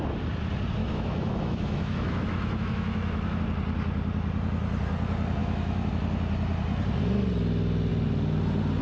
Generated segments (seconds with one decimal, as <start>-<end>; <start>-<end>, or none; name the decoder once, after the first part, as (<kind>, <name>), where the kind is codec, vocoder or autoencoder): 0.8-3.4 (autoencoder, DAC-VAE); 5.4-5.9